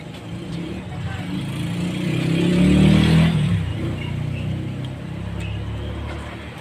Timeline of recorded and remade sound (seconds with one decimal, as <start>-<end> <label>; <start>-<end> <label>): 0.0-6.6 recorded